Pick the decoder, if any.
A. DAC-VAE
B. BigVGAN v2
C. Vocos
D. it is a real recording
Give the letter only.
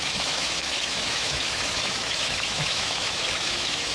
A